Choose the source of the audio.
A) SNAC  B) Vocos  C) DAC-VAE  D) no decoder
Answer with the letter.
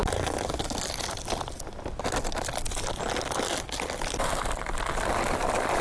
D